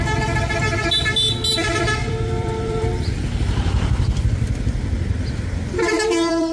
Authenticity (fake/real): fake